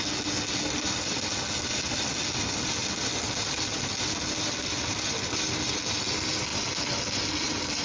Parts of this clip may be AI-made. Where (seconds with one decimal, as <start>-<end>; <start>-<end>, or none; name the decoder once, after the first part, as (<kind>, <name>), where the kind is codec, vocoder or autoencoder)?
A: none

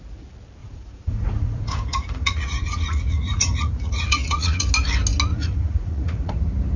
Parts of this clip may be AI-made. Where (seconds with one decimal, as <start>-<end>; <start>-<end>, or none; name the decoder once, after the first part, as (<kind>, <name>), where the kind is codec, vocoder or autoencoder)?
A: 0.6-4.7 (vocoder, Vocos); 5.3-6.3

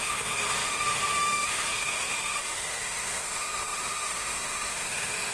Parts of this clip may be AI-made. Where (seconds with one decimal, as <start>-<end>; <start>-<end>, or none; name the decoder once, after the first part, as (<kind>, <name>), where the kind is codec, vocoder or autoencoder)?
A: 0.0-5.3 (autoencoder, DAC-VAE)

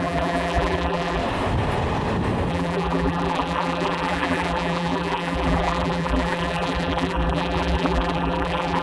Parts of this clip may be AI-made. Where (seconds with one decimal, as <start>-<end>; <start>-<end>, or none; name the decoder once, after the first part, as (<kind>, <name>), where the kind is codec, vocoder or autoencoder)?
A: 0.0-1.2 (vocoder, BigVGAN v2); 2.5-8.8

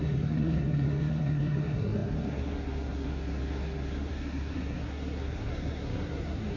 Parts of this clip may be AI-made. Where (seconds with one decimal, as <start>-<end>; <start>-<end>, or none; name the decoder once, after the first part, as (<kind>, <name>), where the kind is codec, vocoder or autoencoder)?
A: 0.0-6.6 (codec, SNAC)